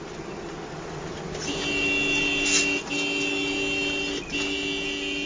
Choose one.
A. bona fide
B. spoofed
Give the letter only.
A